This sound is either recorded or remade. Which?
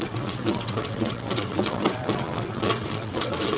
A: remade